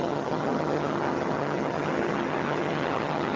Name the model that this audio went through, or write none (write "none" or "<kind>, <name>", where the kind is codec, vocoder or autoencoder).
vocoder, HiFi-GAN